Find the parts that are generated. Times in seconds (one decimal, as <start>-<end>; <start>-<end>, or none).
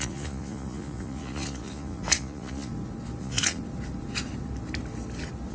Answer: 0.0-2.7; 3.2-3.6